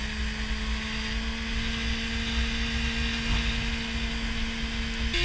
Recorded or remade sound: recorded